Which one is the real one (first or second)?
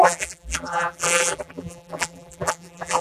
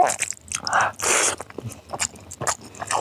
second